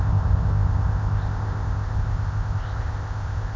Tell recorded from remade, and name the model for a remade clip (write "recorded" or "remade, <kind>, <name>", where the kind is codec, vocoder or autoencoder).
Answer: remade, codec, ZipCodec